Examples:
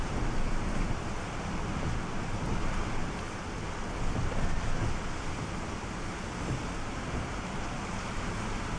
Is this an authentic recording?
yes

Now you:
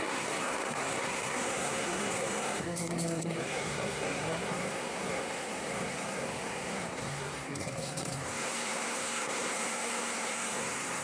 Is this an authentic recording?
no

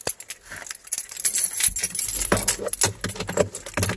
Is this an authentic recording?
yes